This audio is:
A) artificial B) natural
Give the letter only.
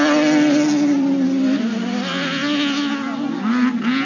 B